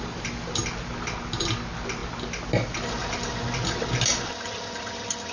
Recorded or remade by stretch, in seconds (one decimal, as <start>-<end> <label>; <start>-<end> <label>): 0.0-5.3 recorded